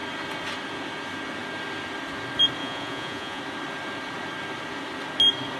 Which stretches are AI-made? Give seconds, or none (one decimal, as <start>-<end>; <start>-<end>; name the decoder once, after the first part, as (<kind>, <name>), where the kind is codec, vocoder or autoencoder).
2.6-3.4 (vocoder, Vocos)